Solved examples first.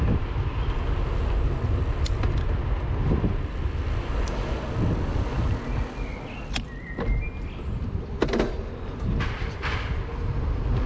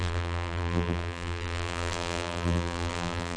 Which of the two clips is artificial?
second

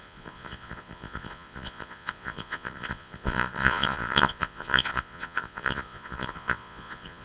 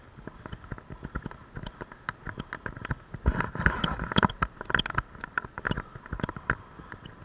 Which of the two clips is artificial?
first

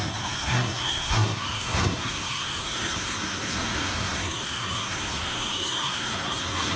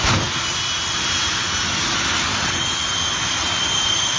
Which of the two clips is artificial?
first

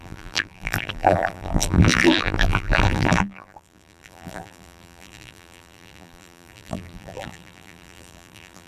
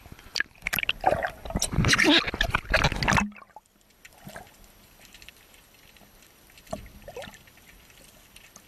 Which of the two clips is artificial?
first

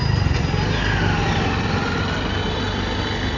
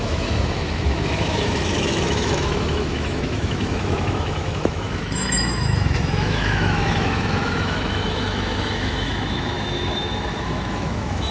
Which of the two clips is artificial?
second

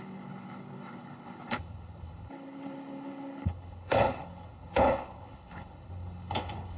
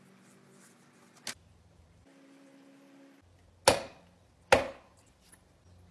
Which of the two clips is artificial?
first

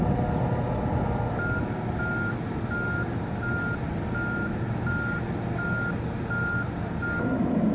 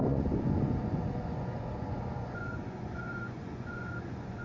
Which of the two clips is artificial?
second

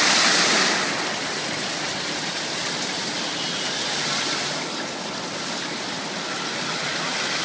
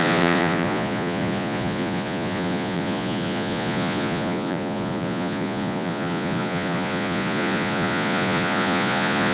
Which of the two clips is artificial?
second